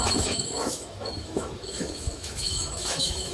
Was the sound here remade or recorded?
remade